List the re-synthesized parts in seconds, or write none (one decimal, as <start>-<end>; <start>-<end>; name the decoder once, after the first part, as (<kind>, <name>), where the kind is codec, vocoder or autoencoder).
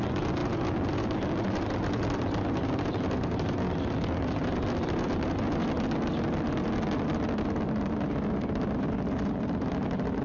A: none